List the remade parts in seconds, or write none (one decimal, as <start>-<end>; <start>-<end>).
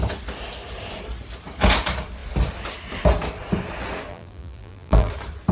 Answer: 4.1-5.1